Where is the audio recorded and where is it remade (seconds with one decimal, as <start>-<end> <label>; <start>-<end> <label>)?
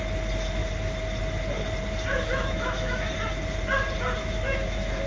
0.0-2.1 recorded; 2.1-3.1 remade; 3.1-4.2 recorded; 4.2-5.1 remade